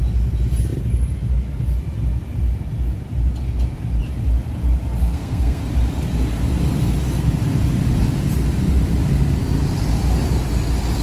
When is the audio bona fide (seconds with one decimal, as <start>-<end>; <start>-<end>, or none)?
0.0-5.0; 5.6-11.0